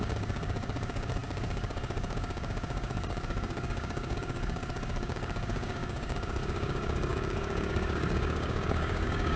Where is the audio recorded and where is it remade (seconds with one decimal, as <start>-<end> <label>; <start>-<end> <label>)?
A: 0.0-9.4 remade